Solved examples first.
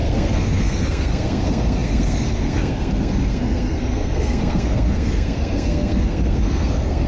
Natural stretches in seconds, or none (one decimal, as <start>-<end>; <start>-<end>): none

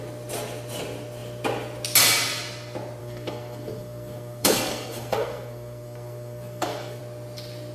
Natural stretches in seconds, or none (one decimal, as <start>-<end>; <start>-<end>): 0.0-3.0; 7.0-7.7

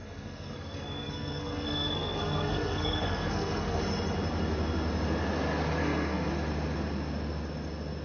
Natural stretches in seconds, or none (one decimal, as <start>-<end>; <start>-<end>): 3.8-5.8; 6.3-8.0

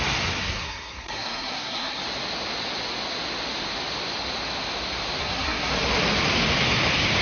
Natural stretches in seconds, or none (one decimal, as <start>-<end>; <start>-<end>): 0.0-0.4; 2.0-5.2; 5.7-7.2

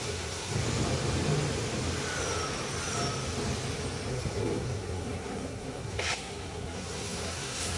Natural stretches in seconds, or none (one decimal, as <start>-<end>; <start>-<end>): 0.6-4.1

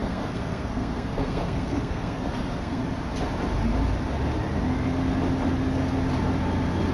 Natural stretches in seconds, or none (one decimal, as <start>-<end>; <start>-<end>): 2.8-6.9

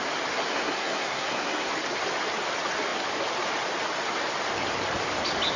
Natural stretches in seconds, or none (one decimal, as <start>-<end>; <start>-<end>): 0.0-0.5; 1.7-5.6

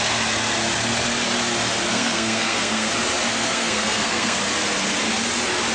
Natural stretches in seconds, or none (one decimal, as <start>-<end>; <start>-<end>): 0.0-1.9; 2.9-3.3; 4.4-5.7